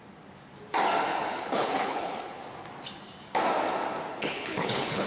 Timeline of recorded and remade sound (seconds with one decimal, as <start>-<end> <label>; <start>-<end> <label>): 0.0-1.1 recorded; 1.1-2.4 remade; 2.4-4.1 recorded; 4.1-5.1 remade